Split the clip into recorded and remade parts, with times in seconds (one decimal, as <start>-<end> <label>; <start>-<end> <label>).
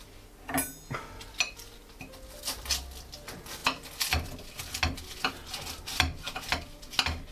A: 0.0-7.3 recorded